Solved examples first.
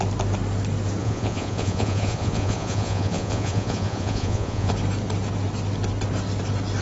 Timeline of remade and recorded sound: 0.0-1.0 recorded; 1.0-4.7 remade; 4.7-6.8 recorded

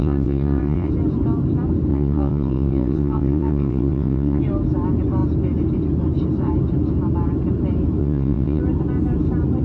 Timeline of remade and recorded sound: 0.0-0.9 remade; 0.9-1.9 recorded; 1.9-4.4 remade; 4.4-8.0 recorded; 8.0-8.6 remade; 8.6-9.6 recorded

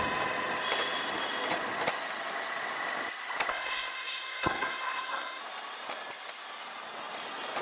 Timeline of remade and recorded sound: 0.0-3.5 recorded; 3.5-5.4 remade; 5.4-7.6 recorded

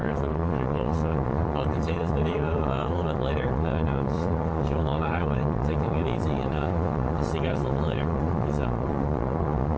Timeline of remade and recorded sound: 0.0-9.8 remade

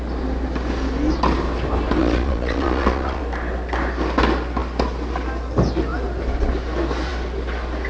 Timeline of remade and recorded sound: 0.0-2.0 recorded; 2.0-3.2 remade; 3.2-7.9 recorded

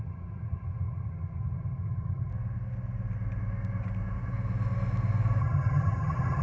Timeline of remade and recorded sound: 0.0-2.3 remade; 2.3-5.4 recorded; 5.4-6.4 remade

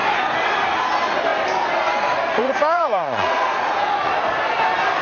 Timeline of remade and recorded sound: 0.0-2.4 recorded; 2.4-4.1 remade; 4.1-5.0 recorded

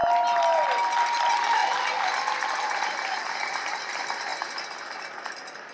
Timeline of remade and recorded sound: 0.0-1.2 recorded; 1.2-1.6 remade; 1.6-3.9 recorded; 3.9-4.3 remade; 4.3-5.0 recorded; 5.0-5.7 remade